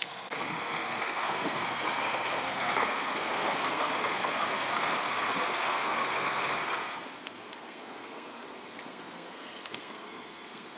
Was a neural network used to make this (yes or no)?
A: yes